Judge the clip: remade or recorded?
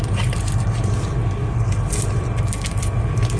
recorded